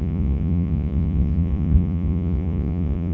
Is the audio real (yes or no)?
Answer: no